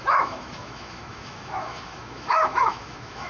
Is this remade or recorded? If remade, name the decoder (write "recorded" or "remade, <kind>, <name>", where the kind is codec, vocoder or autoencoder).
remade, autoencoder, DAC-VAE